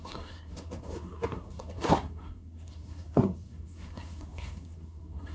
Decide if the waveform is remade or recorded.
remade